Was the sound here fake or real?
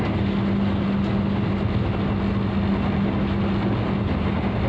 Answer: real